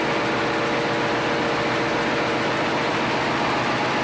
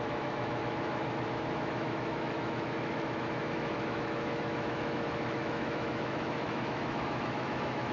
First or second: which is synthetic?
second